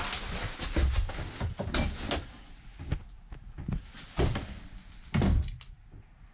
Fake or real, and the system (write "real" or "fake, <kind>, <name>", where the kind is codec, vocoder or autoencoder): real